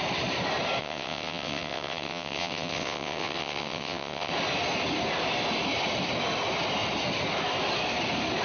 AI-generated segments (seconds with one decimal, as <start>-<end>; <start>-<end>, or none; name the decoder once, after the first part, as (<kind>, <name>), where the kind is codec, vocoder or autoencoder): 0.8-4.3 (vocoder, WaveNeXt)